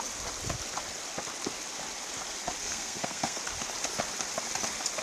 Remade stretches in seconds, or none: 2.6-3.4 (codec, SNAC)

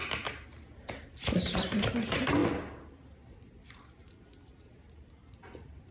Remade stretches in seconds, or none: none

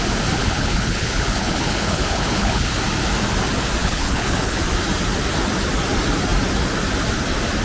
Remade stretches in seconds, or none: 0.4-2.8 (codec, HILCodec); 3.8-4.6

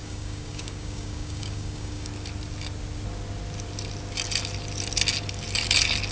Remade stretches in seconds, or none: 0.0-2.1 (codec, DAC)

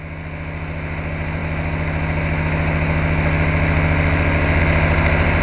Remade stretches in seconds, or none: none

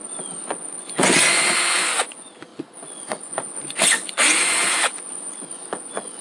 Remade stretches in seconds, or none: 0.5-6.2 (vocoder, Vocos)